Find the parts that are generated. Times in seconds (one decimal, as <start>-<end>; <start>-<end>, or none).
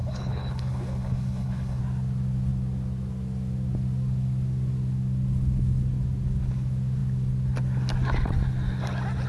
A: 0.0-1.8